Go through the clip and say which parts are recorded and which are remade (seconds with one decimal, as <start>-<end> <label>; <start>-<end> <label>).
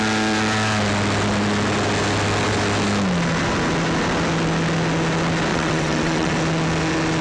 0.0-5.5 recorded; 5.5-6.3 remade; 6.3-7.2 recorded